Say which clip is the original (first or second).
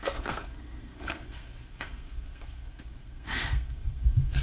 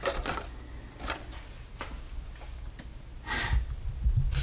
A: second